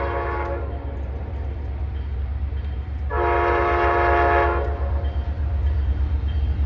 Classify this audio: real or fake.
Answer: real